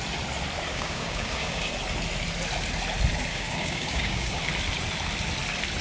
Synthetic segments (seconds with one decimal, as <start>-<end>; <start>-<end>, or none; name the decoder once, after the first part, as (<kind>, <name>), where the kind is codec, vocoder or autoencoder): 0.7-1.7 (codec, DAC); 3.3-4.4